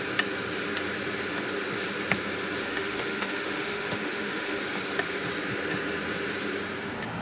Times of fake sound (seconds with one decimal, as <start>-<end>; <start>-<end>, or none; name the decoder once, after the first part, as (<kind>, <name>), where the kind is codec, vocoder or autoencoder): 2.6-4.6 (autoencoder, DAC-VAE)